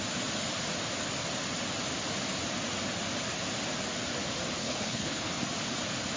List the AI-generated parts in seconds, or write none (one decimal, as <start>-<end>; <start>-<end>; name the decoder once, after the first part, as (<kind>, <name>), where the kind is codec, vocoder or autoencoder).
4.6-5.3 (codec, HILCodec)